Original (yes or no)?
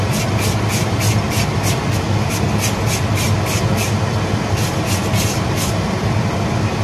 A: yes